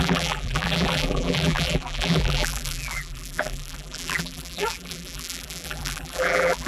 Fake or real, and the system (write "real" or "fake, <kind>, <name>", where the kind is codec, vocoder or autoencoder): fake, vocoder, BigVGAN v2